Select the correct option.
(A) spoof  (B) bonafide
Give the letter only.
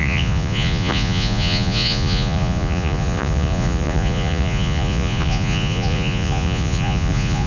A